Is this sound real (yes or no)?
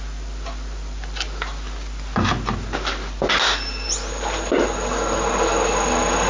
yes